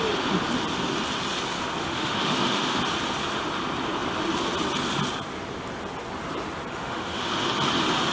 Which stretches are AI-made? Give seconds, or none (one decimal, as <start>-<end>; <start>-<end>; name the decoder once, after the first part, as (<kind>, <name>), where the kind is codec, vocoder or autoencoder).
1.8-2.8 (autoencoder, DAC-VAE); 6.7-7.5